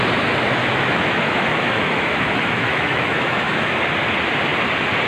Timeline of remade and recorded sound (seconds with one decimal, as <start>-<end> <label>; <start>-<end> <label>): 0.0-0.6 recorded; 0.6-3.7 remade; 3.7-5.1 recorded